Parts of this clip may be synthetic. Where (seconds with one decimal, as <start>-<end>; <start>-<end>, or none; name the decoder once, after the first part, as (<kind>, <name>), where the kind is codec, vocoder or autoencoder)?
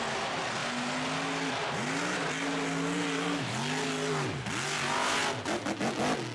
none